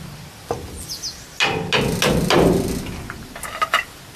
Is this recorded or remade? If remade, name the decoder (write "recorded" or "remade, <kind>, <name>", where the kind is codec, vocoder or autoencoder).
recorded